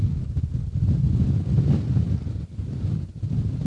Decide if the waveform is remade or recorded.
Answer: recorded